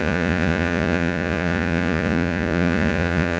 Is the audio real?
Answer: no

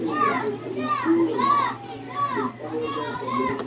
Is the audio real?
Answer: yes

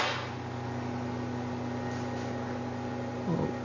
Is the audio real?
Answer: yes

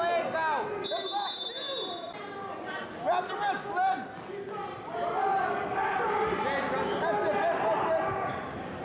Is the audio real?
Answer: yes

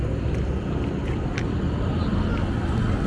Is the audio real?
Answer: yes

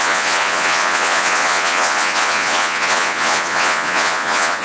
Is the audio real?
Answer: no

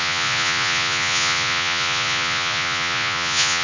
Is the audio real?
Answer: no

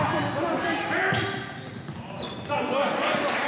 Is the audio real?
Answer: yes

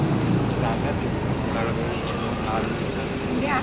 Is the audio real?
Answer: yes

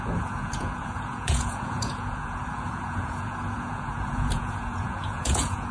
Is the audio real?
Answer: no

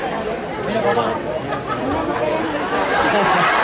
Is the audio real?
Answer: yes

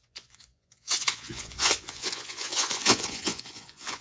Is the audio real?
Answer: no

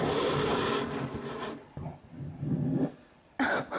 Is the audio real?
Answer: yes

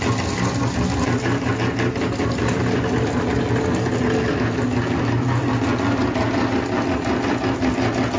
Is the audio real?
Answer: yes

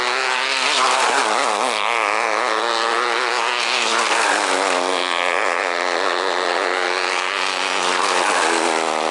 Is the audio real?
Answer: yes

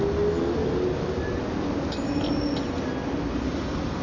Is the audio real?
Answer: yes